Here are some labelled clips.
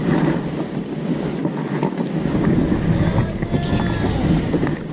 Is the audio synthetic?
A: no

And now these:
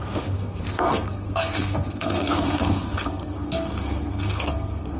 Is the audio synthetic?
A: yes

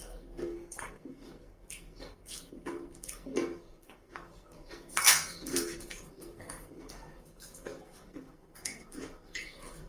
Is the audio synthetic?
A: yes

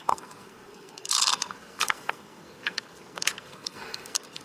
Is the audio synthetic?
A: yes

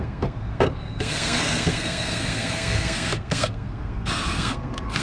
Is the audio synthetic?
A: yes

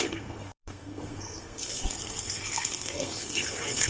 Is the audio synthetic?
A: yes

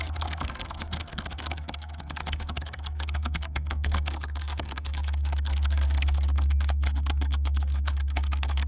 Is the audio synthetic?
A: yes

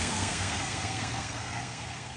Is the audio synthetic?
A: yes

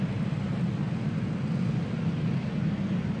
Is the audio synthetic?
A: no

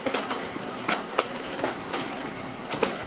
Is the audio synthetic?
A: yes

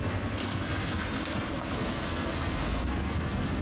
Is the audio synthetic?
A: yes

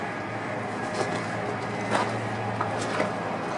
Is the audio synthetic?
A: no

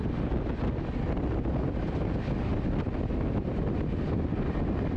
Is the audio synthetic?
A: no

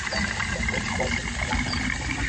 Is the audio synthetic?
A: no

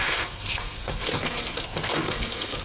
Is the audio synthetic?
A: yes